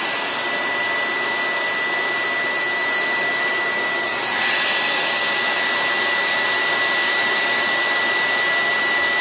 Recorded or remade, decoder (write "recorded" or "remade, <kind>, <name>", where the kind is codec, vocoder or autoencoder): recorded